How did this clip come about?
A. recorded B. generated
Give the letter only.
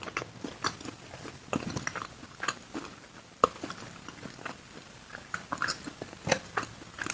A